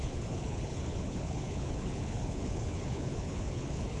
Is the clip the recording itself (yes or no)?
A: no